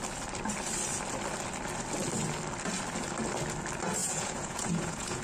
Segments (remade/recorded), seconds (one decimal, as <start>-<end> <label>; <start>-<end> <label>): 0.0-4.0 recorded; 4.0-5.2 remade